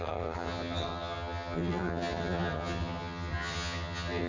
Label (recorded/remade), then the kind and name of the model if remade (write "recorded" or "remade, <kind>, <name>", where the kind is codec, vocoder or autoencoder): remade, vocoder, HiFi-GAN